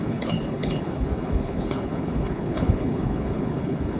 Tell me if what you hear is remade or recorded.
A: remade